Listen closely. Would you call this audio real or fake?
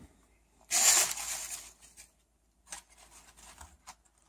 real